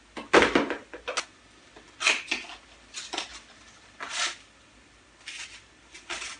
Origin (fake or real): real